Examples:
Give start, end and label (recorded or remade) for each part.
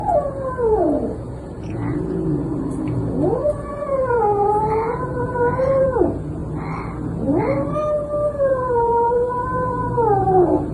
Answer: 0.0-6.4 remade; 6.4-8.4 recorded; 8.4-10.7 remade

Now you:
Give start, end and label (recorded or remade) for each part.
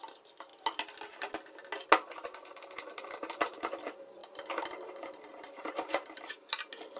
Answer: 0.0-0.5 remade; 0.5-2.4 recorded; 2.4-7.0 remade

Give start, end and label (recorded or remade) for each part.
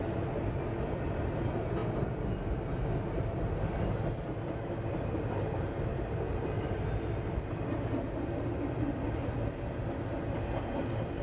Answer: 0.0-11.2 recorded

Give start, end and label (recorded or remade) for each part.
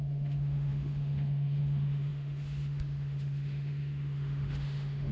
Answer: 0.0-5.1 remade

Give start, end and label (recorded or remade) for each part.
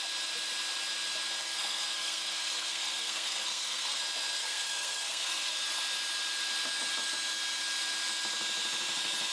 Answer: 0.0-1.4 recorded; 1.4-4.0 remade; 4.0-4.4 recorded; 4.4-5.6 remade; 5.6-9.3 recorded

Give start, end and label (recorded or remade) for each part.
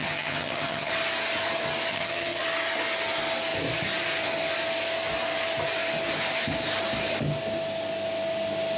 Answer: 0.0-0.9 remade; 0.9-1.9 recorded; 1.9-2.4 remade; 2.4-8.8 recorded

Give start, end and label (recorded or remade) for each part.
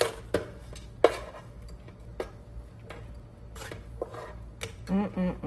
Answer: 0.0-5.5 recorded